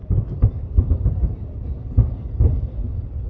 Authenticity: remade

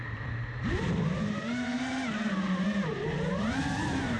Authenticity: remade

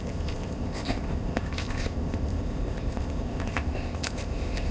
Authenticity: remade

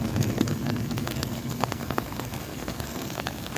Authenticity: remade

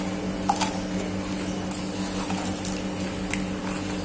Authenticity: recorded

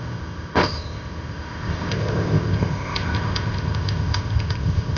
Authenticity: remade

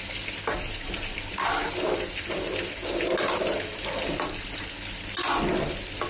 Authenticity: recorded